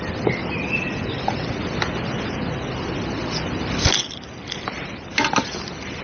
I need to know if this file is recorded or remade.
recorded